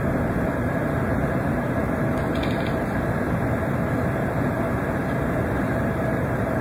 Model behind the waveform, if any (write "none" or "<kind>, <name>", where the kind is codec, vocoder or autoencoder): none